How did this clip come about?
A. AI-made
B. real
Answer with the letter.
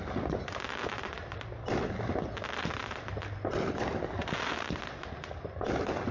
B